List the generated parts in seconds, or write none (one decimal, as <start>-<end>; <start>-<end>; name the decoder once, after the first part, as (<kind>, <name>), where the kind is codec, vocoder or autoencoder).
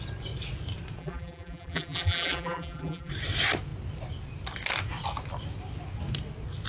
1.0-3.1 (vocoder, BigVGAN v2)